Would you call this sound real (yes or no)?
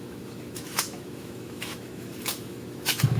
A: no